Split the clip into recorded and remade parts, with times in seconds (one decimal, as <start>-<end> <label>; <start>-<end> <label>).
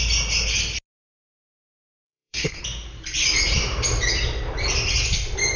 0.0-1.4 recorded; 1.4-2.6 remade; 2.6-5.6 recorded